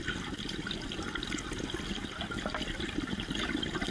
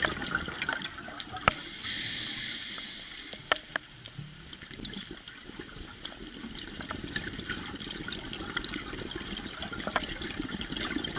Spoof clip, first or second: second